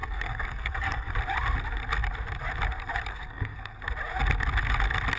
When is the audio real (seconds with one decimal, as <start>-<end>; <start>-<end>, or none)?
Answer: 1.1-3.1; 3.8-5.2